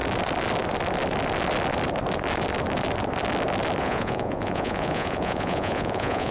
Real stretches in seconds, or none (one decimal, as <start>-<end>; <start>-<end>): 0.0-3.8